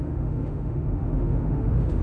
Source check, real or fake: fake